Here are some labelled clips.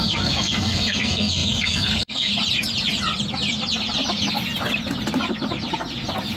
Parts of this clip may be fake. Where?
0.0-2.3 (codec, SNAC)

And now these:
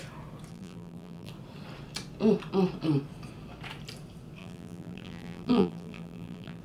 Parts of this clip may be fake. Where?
0.5-1.3 (vocoder, BigVGAN v2); 4.4-6.6

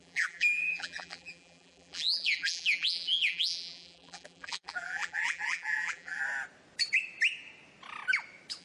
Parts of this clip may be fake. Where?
0.0-6.2 (vocoder, BigVGAN v2)

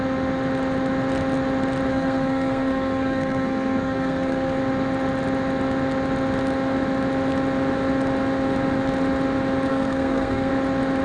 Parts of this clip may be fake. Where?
1.9-4.6 (codec, SNAC); 9.7-10.5